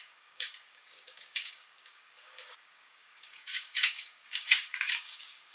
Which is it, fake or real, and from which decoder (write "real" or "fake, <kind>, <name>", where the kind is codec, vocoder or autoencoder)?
fake, codec, DAC